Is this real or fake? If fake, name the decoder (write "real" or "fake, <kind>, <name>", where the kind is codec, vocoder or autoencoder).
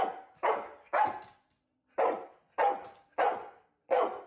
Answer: real